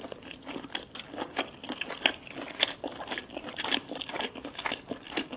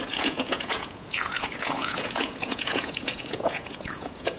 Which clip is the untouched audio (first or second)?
first